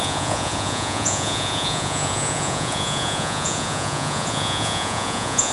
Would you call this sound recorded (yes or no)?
no